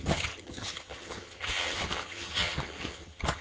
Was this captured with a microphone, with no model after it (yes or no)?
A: no